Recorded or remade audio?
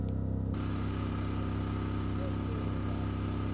recorded